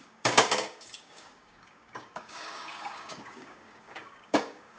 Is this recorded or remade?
remade